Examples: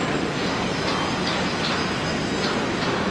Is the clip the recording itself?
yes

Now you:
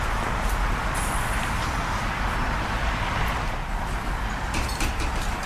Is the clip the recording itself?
no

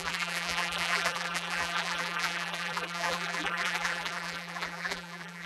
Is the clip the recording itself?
no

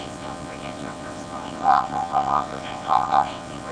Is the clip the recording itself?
no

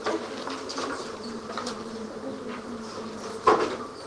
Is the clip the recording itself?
yes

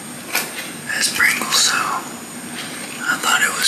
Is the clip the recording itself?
yes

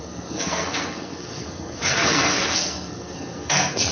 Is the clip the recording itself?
no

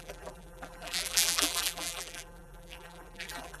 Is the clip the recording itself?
no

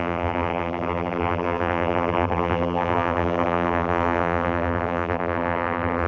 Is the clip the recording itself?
no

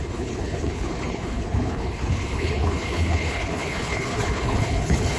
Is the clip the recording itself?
no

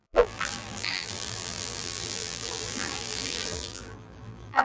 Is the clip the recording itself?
no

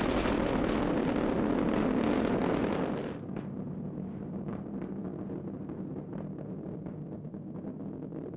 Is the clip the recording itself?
yes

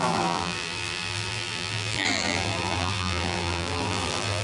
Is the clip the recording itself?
no